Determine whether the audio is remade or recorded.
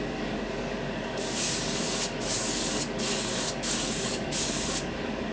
remade